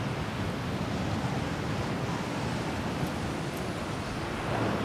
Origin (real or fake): real